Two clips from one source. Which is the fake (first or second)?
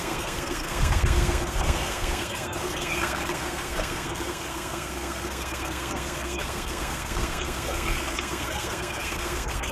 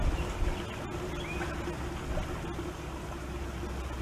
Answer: first